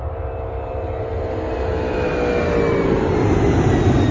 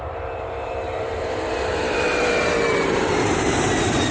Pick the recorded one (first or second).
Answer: first